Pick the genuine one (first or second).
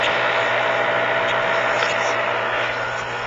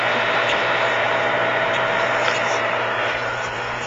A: first